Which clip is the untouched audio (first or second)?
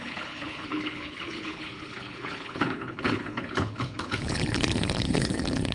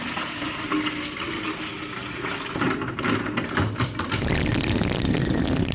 second